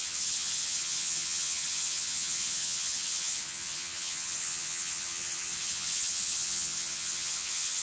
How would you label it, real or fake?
fake